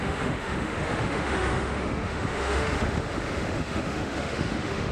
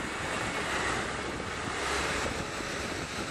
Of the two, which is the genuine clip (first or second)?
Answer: second